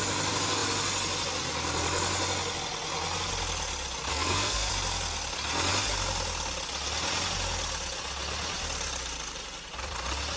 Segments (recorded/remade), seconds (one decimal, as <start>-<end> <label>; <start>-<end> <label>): 0.0-4.1 recorded; 4.1-4.7 remade; 4.7-10.4 recorded